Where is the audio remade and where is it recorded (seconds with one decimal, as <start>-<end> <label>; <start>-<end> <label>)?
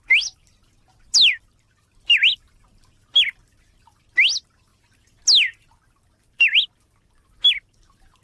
0.0-8.2 recorded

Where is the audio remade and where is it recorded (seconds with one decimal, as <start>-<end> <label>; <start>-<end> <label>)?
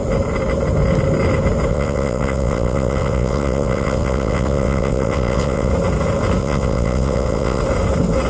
0.0-1.7 recorded; 1.7-5.7 remade; 5.7-6.4 recorded; 6.4-7.6 remade; 7.6-8.3 recorded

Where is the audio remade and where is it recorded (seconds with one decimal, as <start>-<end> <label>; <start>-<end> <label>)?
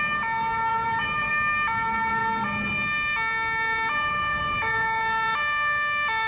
0.0-0.7 recorded; 0.7-1.3 remade; 1.3-6.3 recorded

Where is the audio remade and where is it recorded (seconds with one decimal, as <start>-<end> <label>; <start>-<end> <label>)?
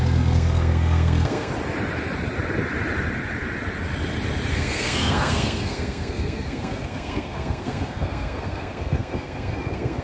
0.0-1.5 remade; 1.5-4.5 recorded; 4.5-10.0 remade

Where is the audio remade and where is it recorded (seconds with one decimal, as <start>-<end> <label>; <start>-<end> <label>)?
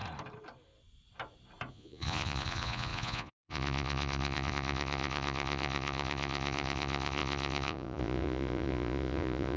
0.0-1.7 recorded; 1.7-9.6 remade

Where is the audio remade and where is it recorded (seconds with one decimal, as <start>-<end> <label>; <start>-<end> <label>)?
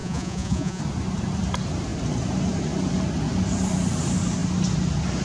0.0-0.8 remade; 0.8-5.2 recorded